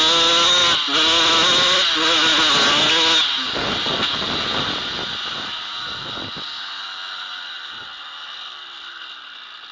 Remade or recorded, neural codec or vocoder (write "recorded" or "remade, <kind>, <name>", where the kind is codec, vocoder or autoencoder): recorded